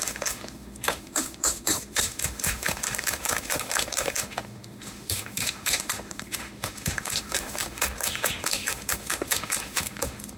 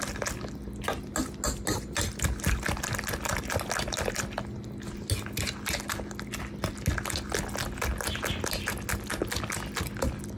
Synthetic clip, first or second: first